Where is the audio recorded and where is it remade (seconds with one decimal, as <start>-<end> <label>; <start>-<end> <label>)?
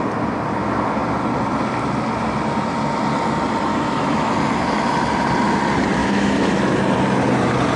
0.0-3.7 recorded; 3.7-4.3 remade; 4.3-6.0 recorded; 6.0-6.8 remade; 6.8-7.8 recorded